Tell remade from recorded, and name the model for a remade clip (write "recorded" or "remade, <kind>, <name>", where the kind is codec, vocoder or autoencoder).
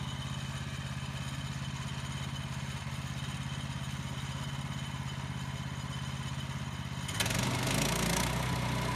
recorded